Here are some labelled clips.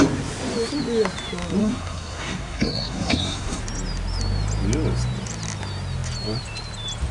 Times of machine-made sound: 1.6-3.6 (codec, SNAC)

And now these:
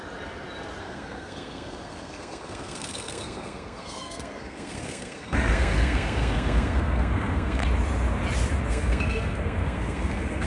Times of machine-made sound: 0.8-7.6 (codec, SNAC); 8.7-10.5